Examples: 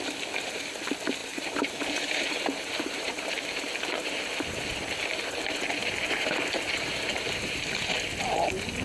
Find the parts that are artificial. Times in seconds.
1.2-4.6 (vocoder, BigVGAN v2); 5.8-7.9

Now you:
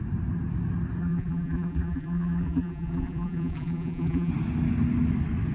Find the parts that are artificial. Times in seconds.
1.0-4.3 (vocoder, BigVGAN v2)

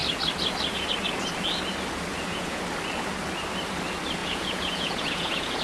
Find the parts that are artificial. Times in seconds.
2.1-2.6 (vocoder, Vocos); 4.2-5.6

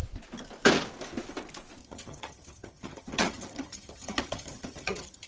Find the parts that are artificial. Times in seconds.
1.8-5.3 (vocoder, HiFi-GAN)

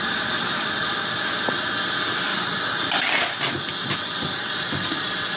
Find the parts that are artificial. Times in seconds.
none

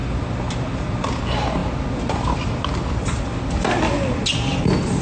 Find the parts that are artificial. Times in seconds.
none

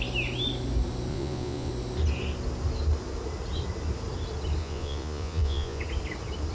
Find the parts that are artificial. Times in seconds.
1.1-1.7 (vocoder, Vocos); 4.6-5.8

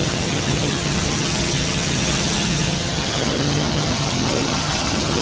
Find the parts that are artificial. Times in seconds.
0.0-5.2 (vocoder, HiFi-GAN)